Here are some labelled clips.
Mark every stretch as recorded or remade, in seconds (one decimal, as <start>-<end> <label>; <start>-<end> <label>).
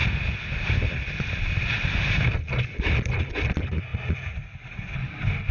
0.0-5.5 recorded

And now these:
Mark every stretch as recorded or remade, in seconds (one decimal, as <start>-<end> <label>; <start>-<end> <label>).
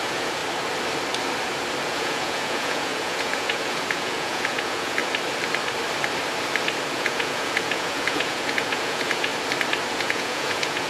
0.0-0.4 remade; 0.4-1.8 recorded; 1.8-5.0 remade; 5.0-6.9 recorded; 6.9-9.3 remade; 9.3-9.9 recorded; 9.9-10.9 remade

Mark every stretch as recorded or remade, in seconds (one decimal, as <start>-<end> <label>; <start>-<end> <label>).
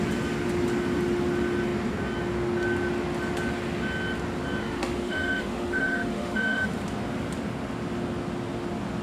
0.0-4.6 recorded; 4.6-6.7 remade; 6.7-9.0 recorded